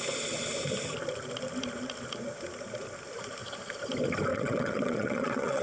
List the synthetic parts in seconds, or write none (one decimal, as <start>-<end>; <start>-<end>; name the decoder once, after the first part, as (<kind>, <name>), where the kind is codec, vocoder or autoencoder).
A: 4.3-5.6 (vocoder, WaveNeXt)